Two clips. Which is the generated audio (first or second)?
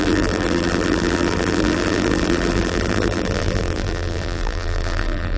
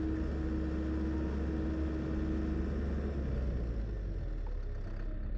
first